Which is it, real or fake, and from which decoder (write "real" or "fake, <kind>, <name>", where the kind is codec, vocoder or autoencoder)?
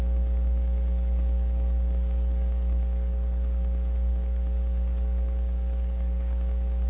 fake, codec, DAC